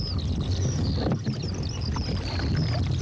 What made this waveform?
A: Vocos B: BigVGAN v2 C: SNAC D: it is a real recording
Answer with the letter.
D